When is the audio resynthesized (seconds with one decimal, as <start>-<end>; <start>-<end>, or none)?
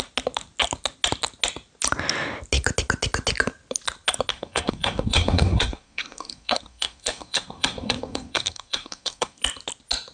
4.3-9.4